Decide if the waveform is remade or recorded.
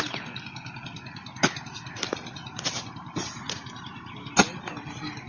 recorded